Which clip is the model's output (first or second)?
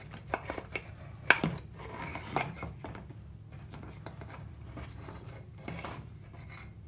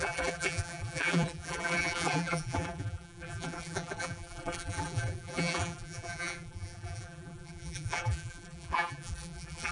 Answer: second